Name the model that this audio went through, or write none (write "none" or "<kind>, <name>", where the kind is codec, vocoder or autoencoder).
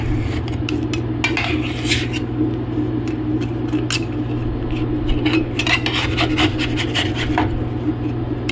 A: none